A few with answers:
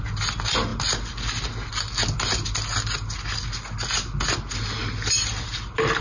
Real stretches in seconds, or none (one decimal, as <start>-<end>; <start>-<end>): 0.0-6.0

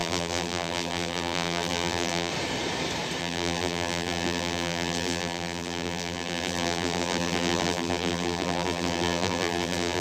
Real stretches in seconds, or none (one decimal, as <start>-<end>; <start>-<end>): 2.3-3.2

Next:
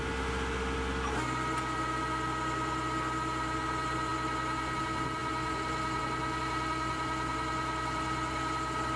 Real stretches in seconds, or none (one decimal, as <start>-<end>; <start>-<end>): 0.0-9.0

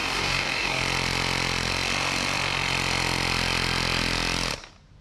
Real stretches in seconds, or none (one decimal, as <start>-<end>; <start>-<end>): 0.8-5.0

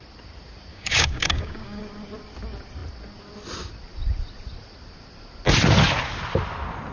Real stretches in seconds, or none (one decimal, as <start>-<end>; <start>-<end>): 0.0-0.7; 1.8-6.9